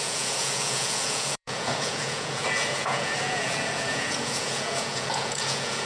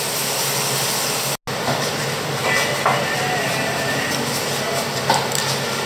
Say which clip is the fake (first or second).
first